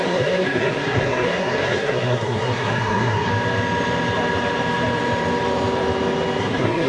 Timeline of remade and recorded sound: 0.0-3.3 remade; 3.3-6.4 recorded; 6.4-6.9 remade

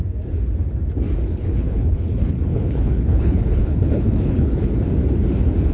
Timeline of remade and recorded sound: 0.0-1.3 recorded; 1.3-4.7 remade; 4.7-5.7 recorded

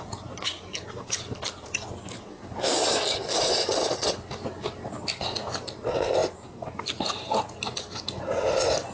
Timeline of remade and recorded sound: 0.0-8.9 recorded

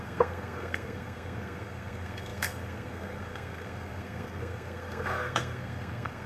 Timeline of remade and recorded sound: 0.0-6.3 remade

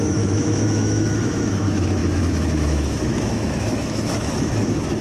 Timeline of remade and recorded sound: 0.0-5.0 remade

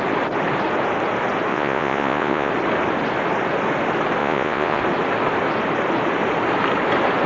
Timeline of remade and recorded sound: 0.0-1.5 recorded; 1.5-2.5 remade; 2.5-4.2 recorded; 4.2-4.8 remade; 4.8-7.3 recorded

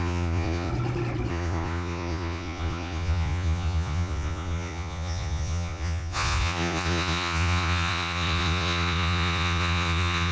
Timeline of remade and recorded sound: 0.0-0.7 remade; 0.7-1.3 recorded; 1.3-10.3 remade